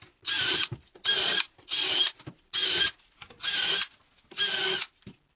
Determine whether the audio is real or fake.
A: real